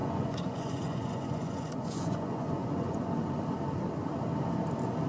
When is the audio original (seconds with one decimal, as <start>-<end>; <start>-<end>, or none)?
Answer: 3.1-5.1